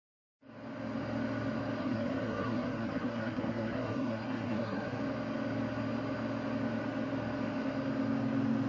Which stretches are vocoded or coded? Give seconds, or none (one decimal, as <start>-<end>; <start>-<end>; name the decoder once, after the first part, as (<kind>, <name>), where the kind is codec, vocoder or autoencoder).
1.8-5.0 (codec, SNAC)